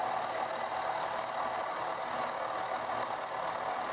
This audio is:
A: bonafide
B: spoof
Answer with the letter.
A